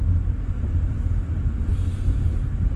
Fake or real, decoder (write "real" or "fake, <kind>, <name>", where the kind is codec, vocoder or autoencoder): real